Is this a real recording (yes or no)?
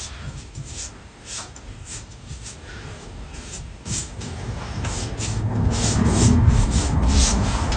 no